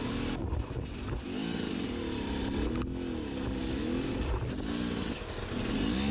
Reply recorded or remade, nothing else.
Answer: recorded